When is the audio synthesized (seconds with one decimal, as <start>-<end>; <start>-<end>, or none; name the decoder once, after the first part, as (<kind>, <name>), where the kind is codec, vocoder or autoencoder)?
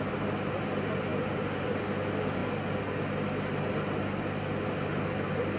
none